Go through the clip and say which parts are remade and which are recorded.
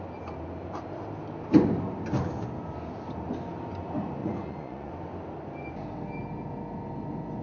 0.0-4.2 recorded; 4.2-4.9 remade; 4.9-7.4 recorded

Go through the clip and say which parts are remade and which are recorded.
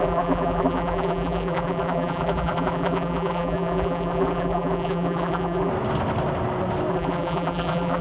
0.0-5.7 remade; 5.7-6.9 recorded; 6.9-8.0 remade